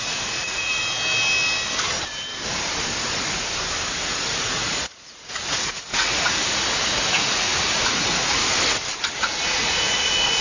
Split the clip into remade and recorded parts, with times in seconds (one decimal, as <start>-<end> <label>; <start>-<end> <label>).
0.0-0.8 remade; 0.8-3.9 recorded; 3.9-8.4 remade; 8.4-9.6 recorded; 9.6-10.4 remade